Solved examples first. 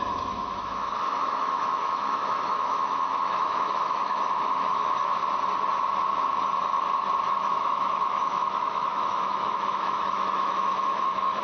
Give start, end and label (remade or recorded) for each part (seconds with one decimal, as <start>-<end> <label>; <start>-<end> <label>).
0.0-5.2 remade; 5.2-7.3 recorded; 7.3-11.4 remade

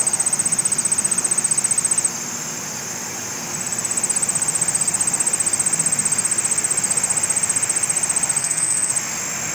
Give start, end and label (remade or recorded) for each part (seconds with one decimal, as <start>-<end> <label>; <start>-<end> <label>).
0.0-8.4 recorded; 8.4-8.9 remade; 8.9-9.5 recorded

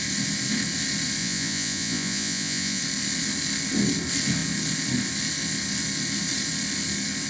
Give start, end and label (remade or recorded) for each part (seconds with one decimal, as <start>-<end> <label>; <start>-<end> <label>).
0.0-1.2 recorded; 1.2-2.8 remade; 2.8-7.3 recorded

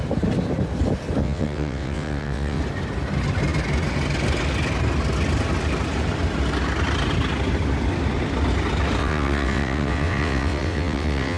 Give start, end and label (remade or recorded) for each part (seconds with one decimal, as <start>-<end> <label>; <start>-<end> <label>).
0.0-1.2 recorded; 1.2-2.6 remade; 2.6-9.0 recorded; 9.0-11.4 remade

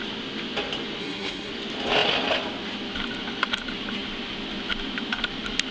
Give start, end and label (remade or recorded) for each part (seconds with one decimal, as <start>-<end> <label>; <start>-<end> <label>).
0.0-1.0 recorded; 1.0-1.5 remade; 1.5-5.7 recorded